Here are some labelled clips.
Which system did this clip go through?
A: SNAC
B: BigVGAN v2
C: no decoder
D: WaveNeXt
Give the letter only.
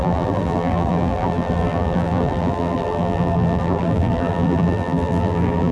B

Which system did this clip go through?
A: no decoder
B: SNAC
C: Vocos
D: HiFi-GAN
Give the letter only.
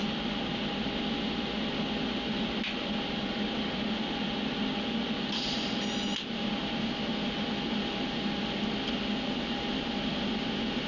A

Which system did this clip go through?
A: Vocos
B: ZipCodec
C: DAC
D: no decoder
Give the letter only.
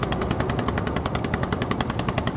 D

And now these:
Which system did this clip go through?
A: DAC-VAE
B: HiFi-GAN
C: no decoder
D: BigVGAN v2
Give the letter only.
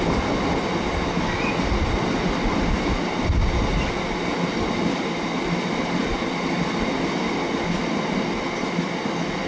C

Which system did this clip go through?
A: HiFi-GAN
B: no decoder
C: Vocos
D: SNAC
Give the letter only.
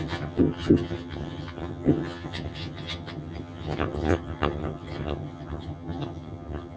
A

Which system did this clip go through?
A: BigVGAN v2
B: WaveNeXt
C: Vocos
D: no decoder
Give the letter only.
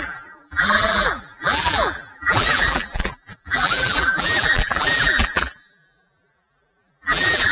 A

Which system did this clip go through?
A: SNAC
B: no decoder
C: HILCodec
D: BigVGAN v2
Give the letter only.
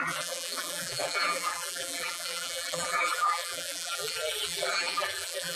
D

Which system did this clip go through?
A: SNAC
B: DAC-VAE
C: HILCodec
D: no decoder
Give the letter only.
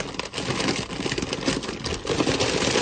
D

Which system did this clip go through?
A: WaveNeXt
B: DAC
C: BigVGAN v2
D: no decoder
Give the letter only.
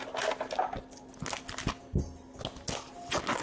D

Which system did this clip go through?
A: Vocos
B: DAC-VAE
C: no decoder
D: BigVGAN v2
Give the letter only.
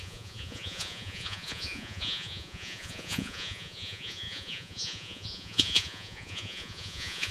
A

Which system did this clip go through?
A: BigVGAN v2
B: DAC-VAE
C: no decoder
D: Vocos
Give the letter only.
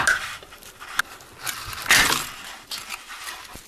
C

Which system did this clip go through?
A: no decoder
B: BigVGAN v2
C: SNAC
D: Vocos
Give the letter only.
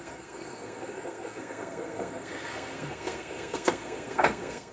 C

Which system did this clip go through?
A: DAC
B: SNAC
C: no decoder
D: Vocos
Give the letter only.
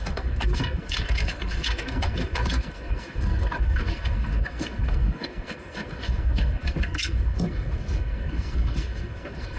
B